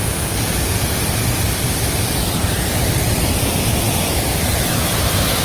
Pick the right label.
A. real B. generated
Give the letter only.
A